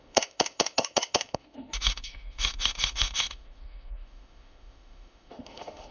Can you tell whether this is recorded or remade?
remade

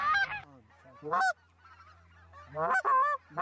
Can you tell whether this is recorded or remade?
recorded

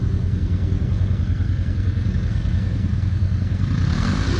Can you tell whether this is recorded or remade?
remade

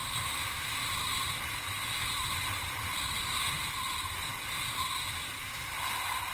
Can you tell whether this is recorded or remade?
remade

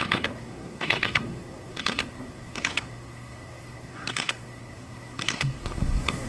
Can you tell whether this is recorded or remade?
remade